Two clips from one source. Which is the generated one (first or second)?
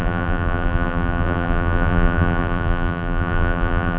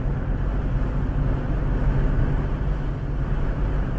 first